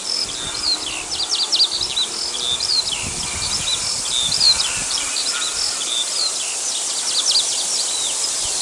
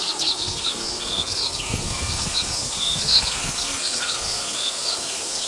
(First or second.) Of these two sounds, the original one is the first